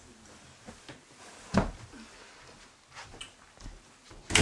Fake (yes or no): no